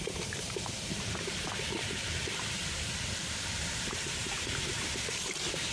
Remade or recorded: remade